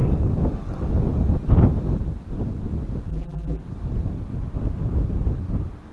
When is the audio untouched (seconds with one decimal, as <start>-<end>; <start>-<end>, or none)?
0.0-3.1; 3.6-5.9